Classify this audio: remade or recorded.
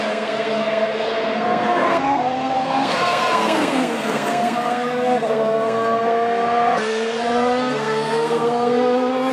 remade